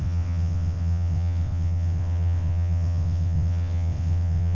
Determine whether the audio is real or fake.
fake